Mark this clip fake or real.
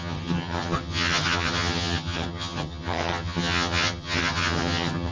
fake